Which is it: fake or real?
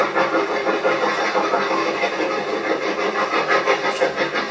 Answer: real